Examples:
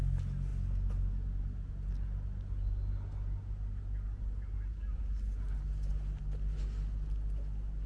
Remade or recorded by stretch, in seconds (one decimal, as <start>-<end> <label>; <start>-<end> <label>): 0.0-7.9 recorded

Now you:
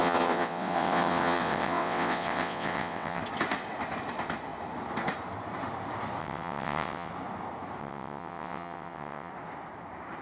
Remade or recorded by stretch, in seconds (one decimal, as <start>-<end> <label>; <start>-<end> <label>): 0.0-3.2 remade; 3.2-6.2 recorded; 6.2-7.1 remade; 7.1-7.8 recorded; 7.8-9.3 remade; 9.3-10.2 recorded

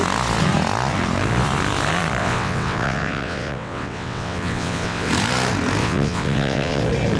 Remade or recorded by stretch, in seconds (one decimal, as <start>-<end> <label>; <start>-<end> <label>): 0.0-2.2 recorded; 2.2-5.1 remade; 5.1-5.8 recorded; 5.8-6.8 remade; 6.8-7.2 recorded

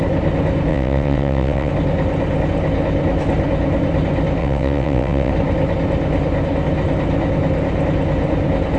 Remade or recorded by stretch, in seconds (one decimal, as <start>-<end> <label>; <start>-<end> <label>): 0.0-0.7 recorded; 0.7-1.7 remade; 1.7-4.4 recorded; 4.4-5.3 remade; 5.3-8.8 recorded

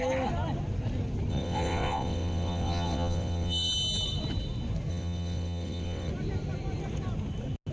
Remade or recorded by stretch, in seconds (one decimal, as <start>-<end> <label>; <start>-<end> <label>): 0.0-1.3 recorded; 1.3-3.7 remade; 3.7-4.9 recorded; 4.9-6.1 remade; 6.1-7.7 recorded